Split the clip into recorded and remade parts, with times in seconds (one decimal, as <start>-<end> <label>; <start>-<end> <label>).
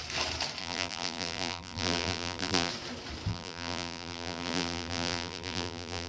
0.0-0.6 recorded; 0.6-2.7 remade; 2.7-3.3 recorded; 3.3-6.1 remade